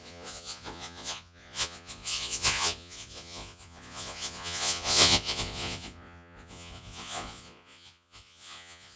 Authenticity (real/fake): fake